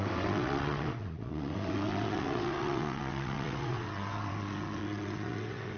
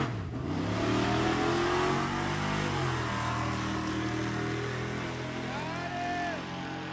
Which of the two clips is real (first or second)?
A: second